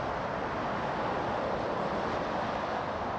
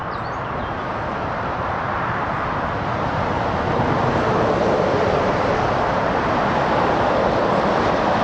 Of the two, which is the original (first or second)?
first